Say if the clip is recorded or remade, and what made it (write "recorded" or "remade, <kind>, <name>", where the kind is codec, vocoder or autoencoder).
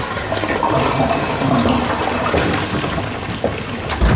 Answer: recorded